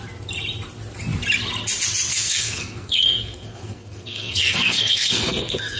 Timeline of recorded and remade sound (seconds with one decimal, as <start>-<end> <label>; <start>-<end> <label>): 0.0-2.1 recorded; 2.1-5.8 remade